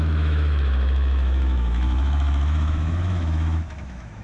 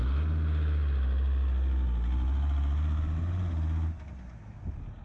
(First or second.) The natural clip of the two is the second